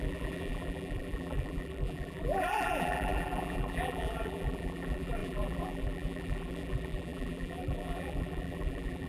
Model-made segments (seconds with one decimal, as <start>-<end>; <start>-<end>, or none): 0.0-9.1